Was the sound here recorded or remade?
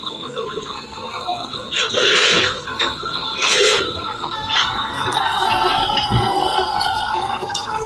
remade